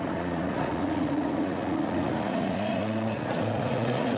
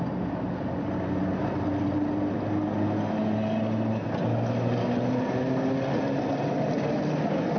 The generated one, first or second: first